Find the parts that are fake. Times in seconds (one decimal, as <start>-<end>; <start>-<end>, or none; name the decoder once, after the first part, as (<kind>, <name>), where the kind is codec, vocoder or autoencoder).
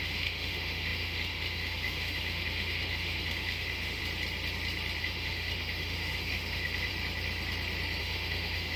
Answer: 0.0-4.0 (autoencoder, DAC-VAE); 5.0-6.9; 8.0-8.8